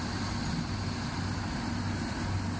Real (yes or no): yes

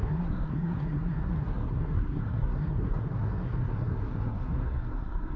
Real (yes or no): no